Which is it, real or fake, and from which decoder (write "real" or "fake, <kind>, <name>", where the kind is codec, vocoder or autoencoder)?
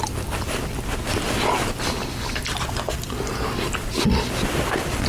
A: real